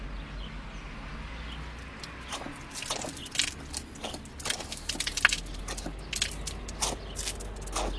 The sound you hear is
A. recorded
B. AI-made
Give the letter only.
A